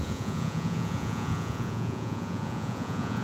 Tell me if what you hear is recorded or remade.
remade